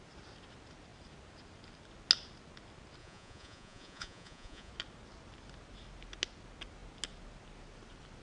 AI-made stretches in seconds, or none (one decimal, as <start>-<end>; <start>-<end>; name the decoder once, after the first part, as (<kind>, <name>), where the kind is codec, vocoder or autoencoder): 3.0-4.7 (vocoder, Vocos)